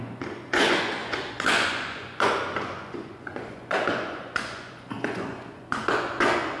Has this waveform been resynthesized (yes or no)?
yes